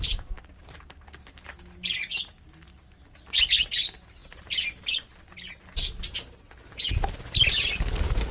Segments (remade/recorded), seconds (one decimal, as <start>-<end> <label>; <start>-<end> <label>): 0.0-8.3 recorded